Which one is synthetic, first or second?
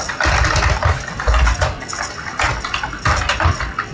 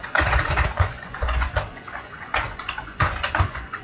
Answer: second